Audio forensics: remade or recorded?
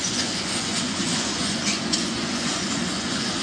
remade